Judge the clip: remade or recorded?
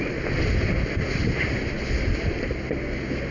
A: recorded